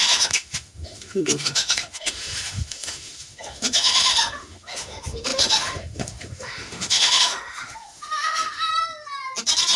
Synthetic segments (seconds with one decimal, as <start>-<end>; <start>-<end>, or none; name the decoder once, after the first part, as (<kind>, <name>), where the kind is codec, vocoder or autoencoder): 0.0-8.7 (autoencoder, DAC-VAE)